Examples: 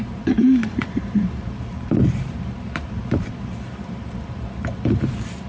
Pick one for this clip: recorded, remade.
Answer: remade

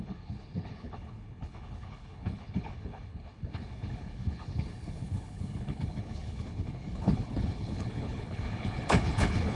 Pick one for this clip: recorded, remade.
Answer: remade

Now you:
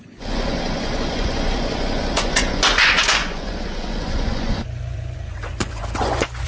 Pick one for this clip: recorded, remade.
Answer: remade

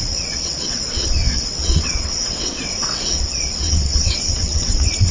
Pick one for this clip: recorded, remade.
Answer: remade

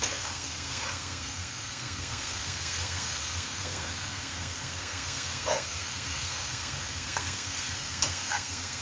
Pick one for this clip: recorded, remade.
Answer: remade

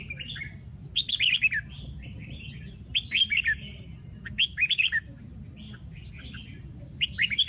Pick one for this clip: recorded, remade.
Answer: recorded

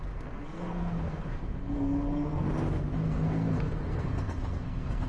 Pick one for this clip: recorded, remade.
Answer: remade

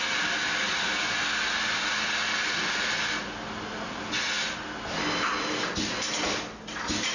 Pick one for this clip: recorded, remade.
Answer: recorded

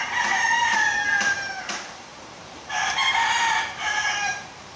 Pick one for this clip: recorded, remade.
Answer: remade